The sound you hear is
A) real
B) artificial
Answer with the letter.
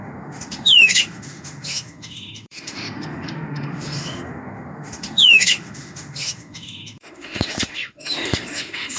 B